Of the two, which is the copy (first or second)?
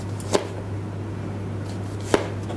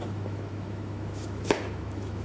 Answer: second